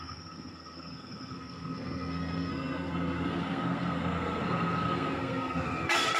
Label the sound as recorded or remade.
remade